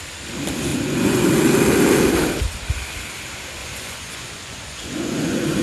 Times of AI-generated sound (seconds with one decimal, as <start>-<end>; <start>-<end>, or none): 0.7-1.3; 3.6-5.6